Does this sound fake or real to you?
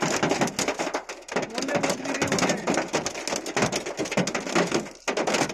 real